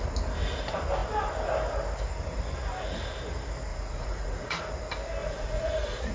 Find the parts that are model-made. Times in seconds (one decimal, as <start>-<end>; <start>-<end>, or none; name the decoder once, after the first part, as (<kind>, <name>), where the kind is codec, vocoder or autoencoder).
3.7-4.6 (vocoder, Vocos); 5.2-6.1